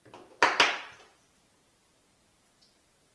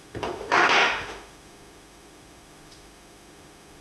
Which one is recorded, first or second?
first